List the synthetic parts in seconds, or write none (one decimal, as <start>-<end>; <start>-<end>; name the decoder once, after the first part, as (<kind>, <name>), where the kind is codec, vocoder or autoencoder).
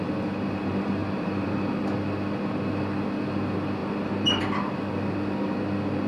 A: 1.0-1.7 (vocoder, BigVGAN v2); 3.8-4.4